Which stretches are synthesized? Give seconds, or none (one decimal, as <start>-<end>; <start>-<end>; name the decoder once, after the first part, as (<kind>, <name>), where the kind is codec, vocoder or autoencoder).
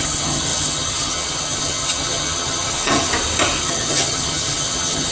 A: 0.0-3.1 (vocoder, HiFi-GAN); 3.6-5.1